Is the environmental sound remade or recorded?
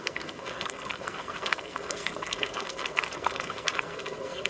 remade